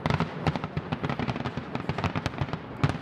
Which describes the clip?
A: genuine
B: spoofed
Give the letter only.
B